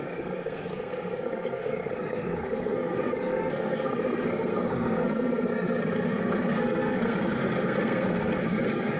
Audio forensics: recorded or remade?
remade